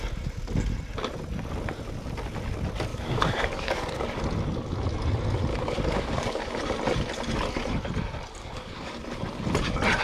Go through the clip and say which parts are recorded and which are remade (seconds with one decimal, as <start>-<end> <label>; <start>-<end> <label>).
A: 0.0-2.9 recorded; 2.9-4.2 remade; 4.2-5.5 recorded; 5.5-6.5 remade; 6.5-8.4 recorded; 8.4-9.0 remade; 9.0-10.0 recorded